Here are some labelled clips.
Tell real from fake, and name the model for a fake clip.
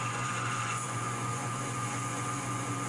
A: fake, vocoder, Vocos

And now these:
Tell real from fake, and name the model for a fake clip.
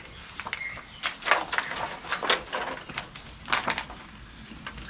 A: real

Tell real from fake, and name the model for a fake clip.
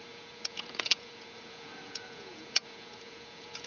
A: fake, vocoder, Vocos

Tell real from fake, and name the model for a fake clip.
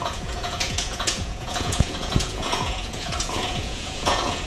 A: fake, vocoder, Vocos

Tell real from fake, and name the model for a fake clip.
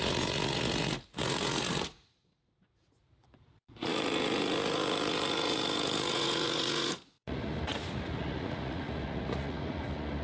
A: fake, vocoder, Vocos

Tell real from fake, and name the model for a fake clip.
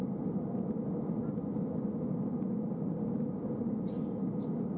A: real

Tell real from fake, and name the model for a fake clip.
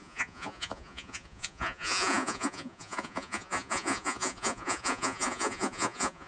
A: fake, vocoder, Vocos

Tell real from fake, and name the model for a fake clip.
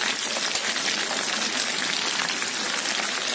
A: real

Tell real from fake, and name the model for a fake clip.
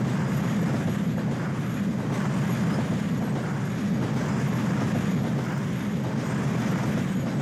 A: real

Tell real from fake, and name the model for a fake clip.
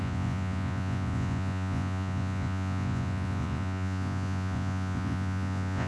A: fake, vocoder, Vocos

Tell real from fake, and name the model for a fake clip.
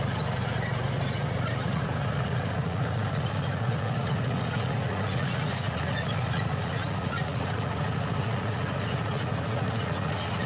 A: fake, vocoder, Vocos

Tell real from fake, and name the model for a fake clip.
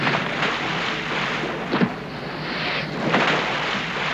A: real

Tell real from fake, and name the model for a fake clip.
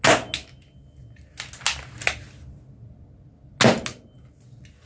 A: real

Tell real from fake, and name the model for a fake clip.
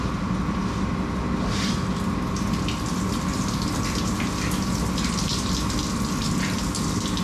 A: real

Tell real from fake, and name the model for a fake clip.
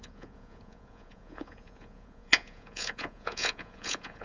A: fake, vocoder, Vocos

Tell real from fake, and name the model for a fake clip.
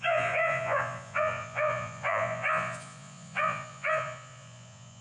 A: fake, vocoder, Vocos